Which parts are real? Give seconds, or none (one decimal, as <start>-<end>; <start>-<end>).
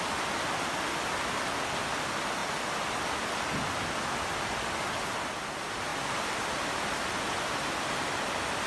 0.0-8.7